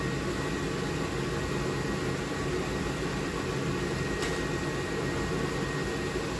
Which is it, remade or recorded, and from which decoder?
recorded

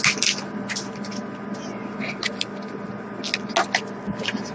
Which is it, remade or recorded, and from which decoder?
recorded